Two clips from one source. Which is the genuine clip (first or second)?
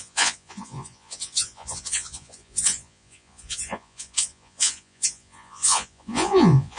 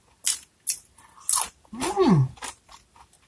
second